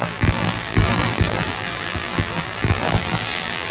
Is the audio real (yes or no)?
no